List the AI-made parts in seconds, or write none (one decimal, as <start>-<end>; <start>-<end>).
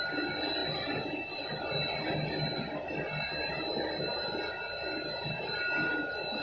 none